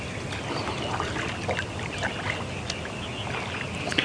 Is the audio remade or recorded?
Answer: recorded